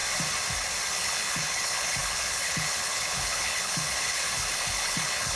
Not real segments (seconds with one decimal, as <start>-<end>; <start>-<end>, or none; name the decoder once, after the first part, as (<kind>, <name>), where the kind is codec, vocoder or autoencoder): 0.9-5.4 (codec, HILCodec)